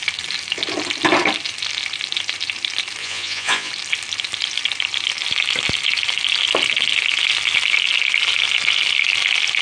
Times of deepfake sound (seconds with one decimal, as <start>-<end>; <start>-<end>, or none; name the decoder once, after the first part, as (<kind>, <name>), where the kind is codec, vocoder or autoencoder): 3.0-3.7 (vocoder, Vocos)